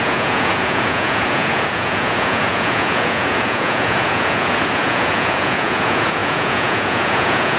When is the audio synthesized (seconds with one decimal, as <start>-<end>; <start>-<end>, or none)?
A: 0.0-7.6